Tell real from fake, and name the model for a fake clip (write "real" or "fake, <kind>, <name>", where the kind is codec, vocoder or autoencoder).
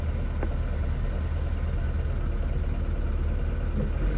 real